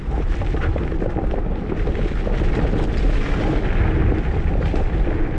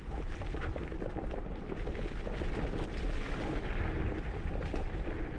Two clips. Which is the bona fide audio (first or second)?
first